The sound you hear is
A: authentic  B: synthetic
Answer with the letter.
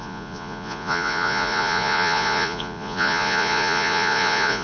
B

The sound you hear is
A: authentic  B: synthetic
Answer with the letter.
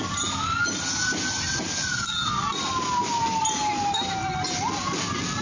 A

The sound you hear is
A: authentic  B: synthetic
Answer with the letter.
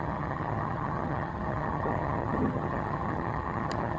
B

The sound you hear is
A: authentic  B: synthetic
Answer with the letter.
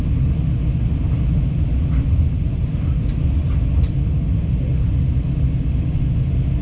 A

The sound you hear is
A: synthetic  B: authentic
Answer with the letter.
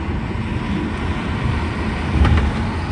B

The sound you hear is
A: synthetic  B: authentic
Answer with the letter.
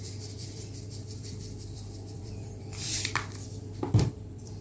A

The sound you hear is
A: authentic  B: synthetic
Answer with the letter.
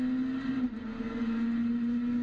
A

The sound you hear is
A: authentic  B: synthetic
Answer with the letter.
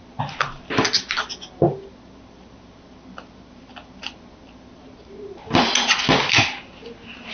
A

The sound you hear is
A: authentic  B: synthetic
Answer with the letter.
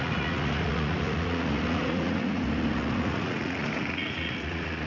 B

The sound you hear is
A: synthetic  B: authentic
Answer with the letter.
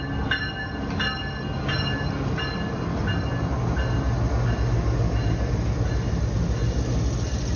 B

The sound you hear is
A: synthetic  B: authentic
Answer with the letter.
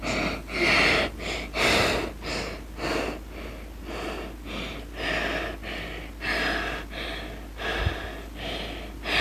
B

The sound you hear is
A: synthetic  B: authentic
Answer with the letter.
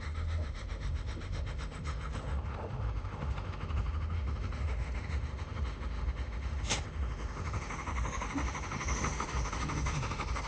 A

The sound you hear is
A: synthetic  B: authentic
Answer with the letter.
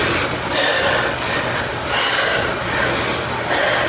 B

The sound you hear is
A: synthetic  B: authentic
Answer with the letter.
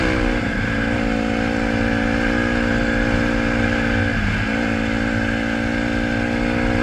B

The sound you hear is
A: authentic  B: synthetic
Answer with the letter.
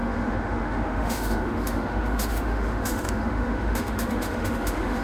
B